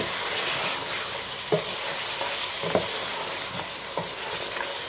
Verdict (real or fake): real